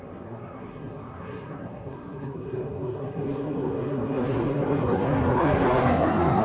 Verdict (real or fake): fake